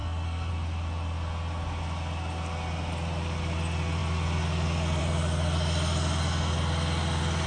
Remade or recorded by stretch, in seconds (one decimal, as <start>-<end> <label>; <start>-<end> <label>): 0.0-0.5 remade; 0.5-7.5 recorded